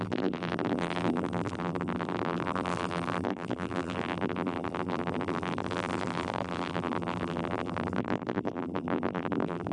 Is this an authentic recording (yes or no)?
no